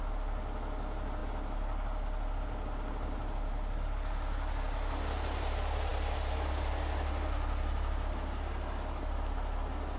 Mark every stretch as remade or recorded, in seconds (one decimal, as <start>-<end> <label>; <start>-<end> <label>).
0.0-10.0 recorded